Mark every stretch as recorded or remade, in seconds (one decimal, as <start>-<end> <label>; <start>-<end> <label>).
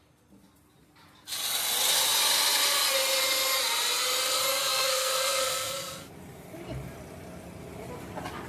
0.0-4.5 recorded; 4.5-6.1 remade; 6.1-8.5 recorded